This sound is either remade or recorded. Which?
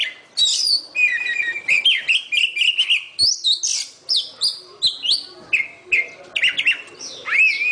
recorded